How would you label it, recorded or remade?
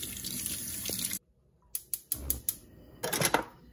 recorded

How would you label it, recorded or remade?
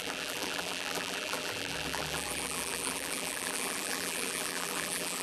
remade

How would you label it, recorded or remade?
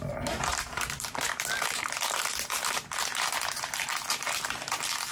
remade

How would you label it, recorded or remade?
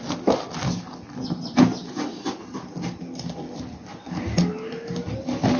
recorded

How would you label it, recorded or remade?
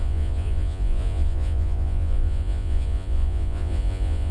remade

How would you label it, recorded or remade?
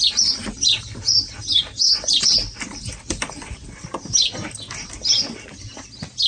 recorded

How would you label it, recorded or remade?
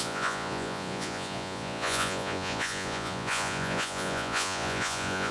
remade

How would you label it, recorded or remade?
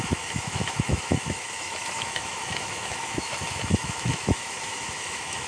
remade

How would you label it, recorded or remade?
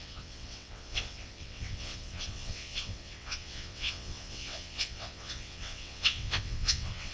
remade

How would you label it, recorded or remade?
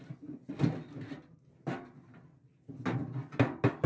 recorded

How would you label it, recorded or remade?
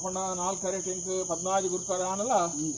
recorded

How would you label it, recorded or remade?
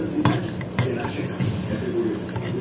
recorded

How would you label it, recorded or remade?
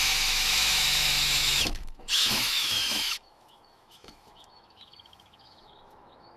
remade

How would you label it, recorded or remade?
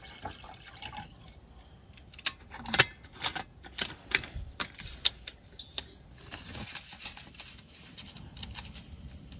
recorded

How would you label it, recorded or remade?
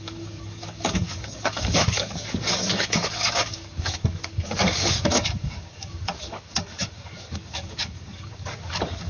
remade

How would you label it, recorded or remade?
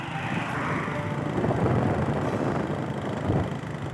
recorded